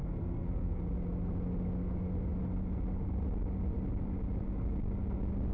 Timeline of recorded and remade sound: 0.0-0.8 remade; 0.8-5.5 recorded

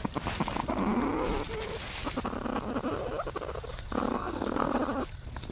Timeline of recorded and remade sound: 0.0-4.1 recorded; 4.1-4.7 remade; 4.7-5.5 recorded

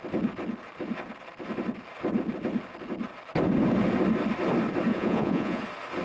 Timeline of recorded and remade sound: 0.0-4.9 recorded; 4.9-5.6 remade; 5.6-6.0 recorded

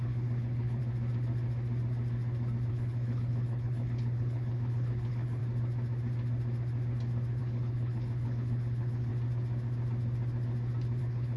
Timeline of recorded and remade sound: 0.0-0.8 remade; 0.8-2.7 recorded; 2.7-5.4 remade; 5.4-7.4 recorded; 7.4-9.1 remade; 9.1-11.0 recorded; 11.0-11.4 remade

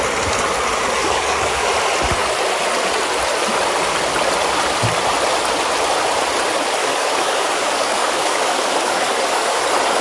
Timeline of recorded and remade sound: 0.0-1.0 recorded; 1.0-1.7 remade; 1.7-6.8 recorded; 6.8-9.6 remade; 9.6-10.0 recorded

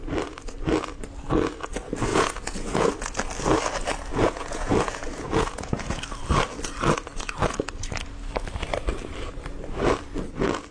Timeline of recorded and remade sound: 0.0-2.1 recorded; 2.1-2.9 remade; 2.9-4.1 recorded; 4.1-6.0 remade; 6.0-10.7 recorded